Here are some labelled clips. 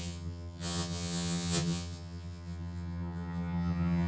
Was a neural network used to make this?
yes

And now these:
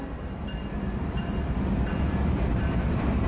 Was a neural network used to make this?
no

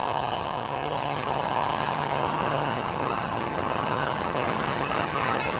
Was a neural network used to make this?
yes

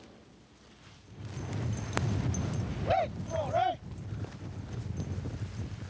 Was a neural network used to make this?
no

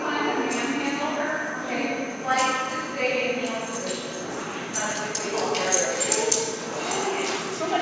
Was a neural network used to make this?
no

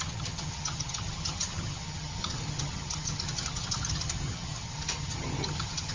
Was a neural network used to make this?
yes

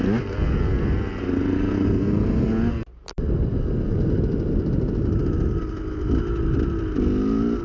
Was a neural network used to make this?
no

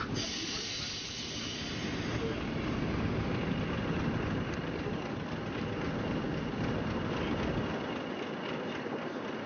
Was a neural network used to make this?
no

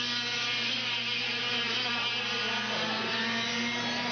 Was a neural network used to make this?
no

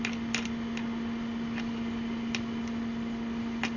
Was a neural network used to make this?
no